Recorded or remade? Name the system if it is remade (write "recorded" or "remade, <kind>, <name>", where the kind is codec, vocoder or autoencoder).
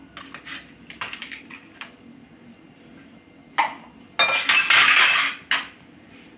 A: recorded